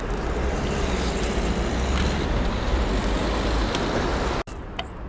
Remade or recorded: recorded